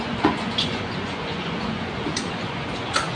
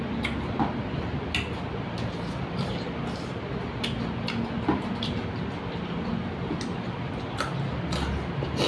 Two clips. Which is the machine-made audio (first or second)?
first